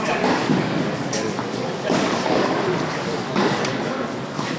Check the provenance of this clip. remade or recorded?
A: remade